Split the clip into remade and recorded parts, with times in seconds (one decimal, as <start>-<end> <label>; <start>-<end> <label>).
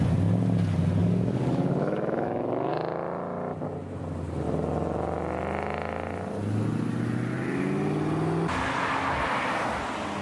0.0-1.0 recorded; 1.0-2.7 remade; 2.7-10.2 recorded